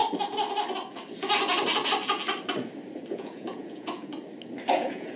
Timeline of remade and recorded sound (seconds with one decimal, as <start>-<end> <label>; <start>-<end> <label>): 0.0-3.1 recorded; 3.1-4.1 remade; 4.1-4.7 recorded; 4.7-5.2 remade